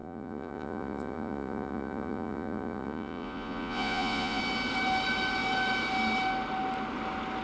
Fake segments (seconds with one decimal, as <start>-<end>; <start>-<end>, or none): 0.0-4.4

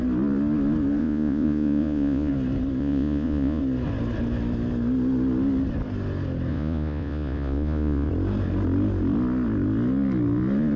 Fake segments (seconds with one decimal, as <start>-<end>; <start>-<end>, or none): 1.0-2.3; 2.8-3.6; 6.5-8.1

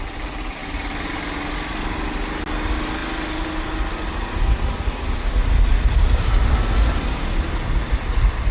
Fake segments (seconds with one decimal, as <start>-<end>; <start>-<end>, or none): none

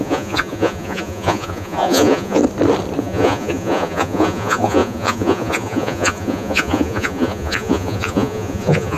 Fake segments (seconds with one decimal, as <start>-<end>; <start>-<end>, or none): 0.0-2.4; 3.0-9.0

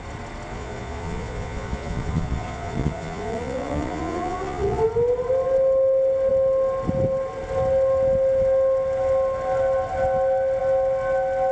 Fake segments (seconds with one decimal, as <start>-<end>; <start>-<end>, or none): 0.5-4.8